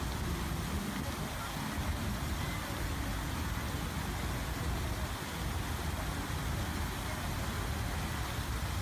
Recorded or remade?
recorded